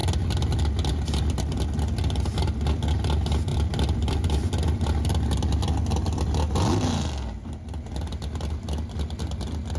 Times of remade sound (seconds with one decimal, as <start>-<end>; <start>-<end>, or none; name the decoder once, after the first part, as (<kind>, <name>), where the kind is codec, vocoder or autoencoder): 0.0-0.6 (vocoder, BigVGAN v2); 3.5-5.6